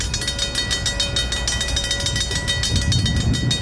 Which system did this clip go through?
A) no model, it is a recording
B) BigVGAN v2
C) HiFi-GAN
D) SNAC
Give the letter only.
A